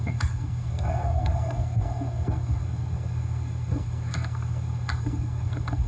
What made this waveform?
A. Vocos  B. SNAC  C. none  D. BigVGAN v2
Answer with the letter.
B